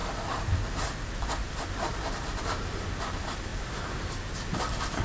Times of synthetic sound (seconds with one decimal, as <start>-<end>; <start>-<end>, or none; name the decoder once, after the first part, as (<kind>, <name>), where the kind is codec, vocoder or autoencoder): none